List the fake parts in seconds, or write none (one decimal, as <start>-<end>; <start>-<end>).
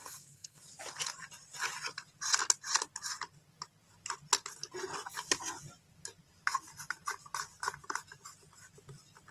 0.0-0.6